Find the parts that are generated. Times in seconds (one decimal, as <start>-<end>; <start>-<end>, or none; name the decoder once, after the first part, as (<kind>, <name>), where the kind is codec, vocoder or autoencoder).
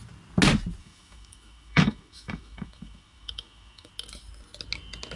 0.8-3.9 (autoencoder, DAC-VAE)